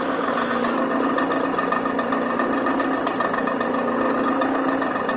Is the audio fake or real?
real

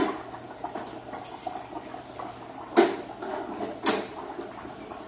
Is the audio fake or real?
real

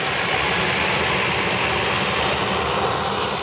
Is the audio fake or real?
real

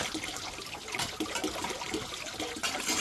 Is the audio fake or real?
real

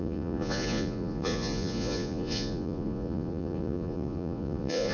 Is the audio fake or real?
fake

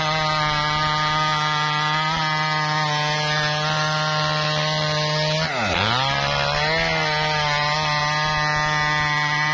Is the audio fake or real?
real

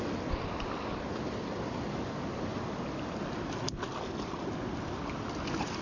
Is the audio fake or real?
real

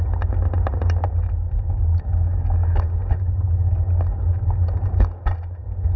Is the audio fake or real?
real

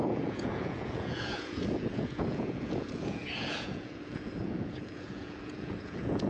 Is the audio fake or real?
fake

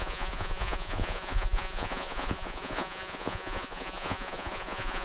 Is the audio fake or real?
fake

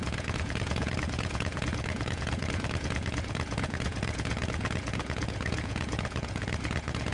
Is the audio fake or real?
fake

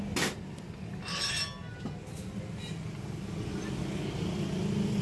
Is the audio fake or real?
real